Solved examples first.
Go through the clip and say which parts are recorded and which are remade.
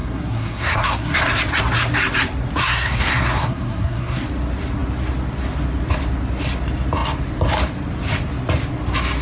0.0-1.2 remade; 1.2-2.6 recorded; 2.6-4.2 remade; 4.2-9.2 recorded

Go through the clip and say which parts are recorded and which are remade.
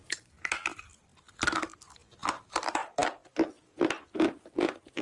0.0-5.0 recorded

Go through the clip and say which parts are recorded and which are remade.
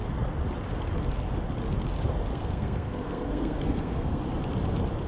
0.0-2.3 recorded; 2.3-4.2 remade; 4.2-5.1 recorded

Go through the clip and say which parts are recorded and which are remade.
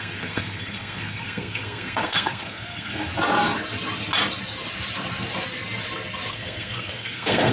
0.0-3.1 remade; 3.1-6.3 recorded; 6.3-7.5 remade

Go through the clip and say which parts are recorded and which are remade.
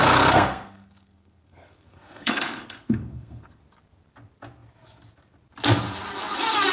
0.0-3.6 remade; 3.6-6.7 recorded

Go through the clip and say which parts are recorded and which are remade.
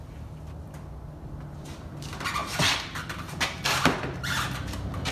0.0-5.1 recorded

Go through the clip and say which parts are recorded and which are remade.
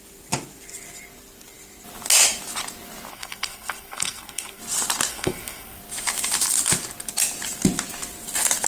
0.0-3.1 recorded; 3.1-4.6 remade; 4.6-5.1 recorded; 5.1-5.8 remade; 5.8-8.7 recorded